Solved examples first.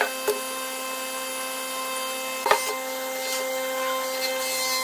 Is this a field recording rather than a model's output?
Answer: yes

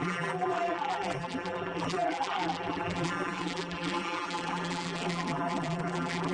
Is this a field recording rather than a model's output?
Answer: no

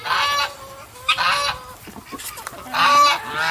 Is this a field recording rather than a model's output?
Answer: yes